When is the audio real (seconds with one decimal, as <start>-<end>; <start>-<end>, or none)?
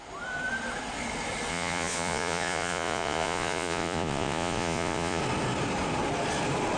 0.0-1.5; 5.2-6.8